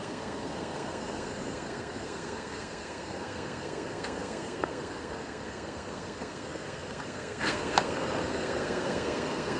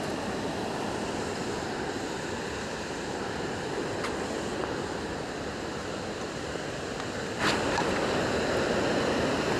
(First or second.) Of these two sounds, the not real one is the first